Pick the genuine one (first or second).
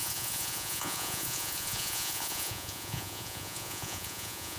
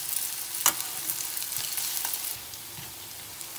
second